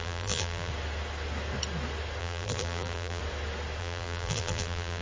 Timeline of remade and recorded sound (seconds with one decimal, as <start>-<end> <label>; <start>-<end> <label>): 0.0-0.7 remade; 0.7-2.2 recorded; 2.2-3.2 remade; 3.2-3.8 recorded; 3.8-5.0 remade